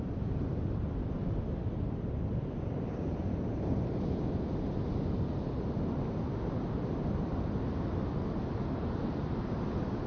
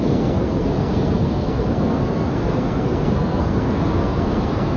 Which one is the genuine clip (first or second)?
first